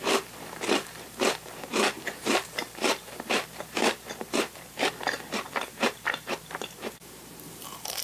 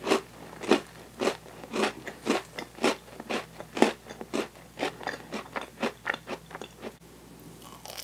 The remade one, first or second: first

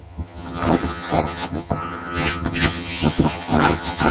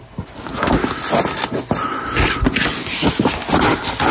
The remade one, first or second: first